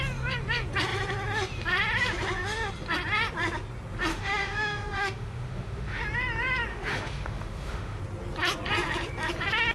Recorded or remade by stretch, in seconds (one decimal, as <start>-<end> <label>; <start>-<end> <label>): 0.0-4.1 recorded; 4.1-6.0 remade; 6.0-6.7 recorded; 6.7-8.0 remade; 8.0-9.7 recorded